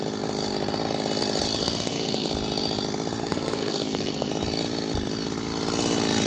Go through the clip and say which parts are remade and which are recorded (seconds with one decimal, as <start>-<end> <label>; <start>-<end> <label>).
0.0-1.6 recorded; 1.6-2.3 remade; 2.3-3.2 recorded; 3.2-4.3 remade; 4.3-6.3 recorded